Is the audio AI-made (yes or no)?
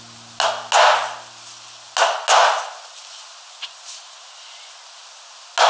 no